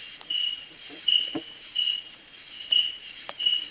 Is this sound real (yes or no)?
no